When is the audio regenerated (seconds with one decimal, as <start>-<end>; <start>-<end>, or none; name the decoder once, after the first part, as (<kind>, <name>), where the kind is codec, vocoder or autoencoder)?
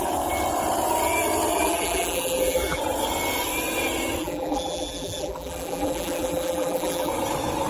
1.5-2.8 (vocoder, BigVGAN v2); 4.2-7.1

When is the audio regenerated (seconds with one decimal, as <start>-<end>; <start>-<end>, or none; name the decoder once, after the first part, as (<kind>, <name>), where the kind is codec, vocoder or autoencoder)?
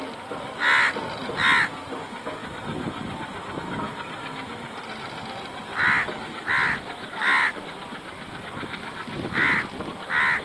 2.4-3.6 (vocoder, BigVGAN v2); 5.7-9.2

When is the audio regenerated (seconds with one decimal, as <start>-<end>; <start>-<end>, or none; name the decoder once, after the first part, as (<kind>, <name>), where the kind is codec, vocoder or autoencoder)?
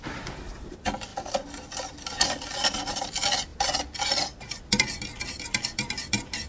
0.0-1.1 (vocoder, BigVGAN v2); 1.7-3.5; 5.4-6.5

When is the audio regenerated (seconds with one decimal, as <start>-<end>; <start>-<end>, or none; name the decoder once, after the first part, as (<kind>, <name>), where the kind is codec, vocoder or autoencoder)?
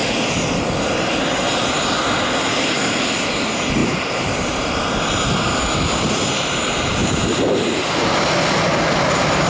3.8-4.9 (vocoder, BigVGAN v2); 7.0-8.3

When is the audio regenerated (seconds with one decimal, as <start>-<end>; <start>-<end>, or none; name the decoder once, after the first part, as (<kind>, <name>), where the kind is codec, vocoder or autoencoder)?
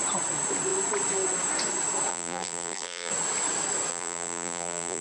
2.1-3.1 (vocoder, BigVGAN v2); 3.9-5.0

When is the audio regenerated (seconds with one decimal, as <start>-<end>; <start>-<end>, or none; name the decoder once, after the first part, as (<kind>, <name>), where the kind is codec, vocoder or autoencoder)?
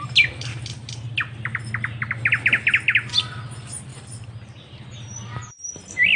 3.9-6.2 (vocoder, BigVGAN v2)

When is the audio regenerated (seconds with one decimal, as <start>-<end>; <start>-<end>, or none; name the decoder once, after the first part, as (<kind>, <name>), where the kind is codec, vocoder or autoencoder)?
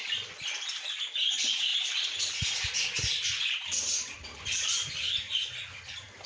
1.7-2.4 (vocoder, BigVGAN v2)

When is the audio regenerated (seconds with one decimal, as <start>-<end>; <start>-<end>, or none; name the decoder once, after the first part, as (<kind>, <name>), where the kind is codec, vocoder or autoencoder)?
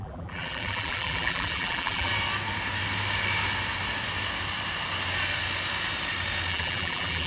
0.0-2.1 (vocoder, BigVGAN v2); 6.5-7.3